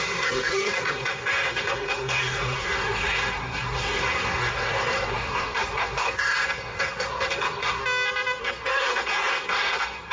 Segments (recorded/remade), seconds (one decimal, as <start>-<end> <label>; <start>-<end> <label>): 0.0-7.8 remade; 7.8-8.4 recorded; 8.4-10.1 remade